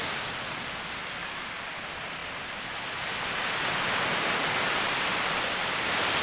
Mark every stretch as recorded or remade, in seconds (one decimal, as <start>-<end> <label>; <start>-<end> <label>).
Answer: 0.0-1.2 recorded; 1.2-1.8 remade; 1.8-6.2 recorded